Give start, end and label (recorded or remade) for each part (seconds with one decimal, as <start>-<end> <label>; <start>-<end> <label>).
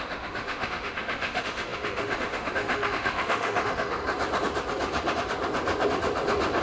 0.0-4.0 remade; 4.0-6.6 recorded